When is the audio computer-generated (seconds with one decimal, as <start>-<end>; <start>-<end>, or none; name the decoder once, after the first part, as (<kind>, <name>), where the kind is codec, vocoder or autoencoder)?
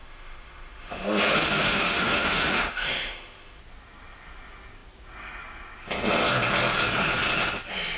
0.0-3.6 (autoencoder, DAC-VAE)